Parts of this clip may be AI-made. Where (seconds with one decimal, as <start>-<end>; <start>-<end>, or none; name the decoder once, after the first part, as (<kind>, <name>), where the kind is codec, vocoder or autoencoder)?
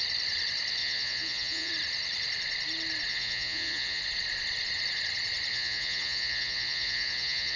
0.8-1.7 (vocoder, Vocos); 3.1-4.0; 5.5-7.6